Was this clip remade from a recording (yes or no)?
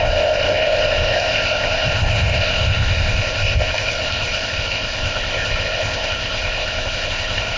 yes